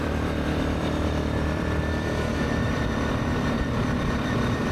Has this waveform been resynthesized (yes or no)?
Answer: yes